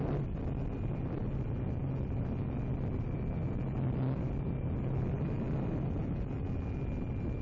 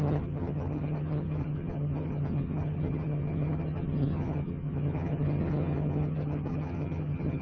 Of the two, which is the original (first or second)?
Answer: first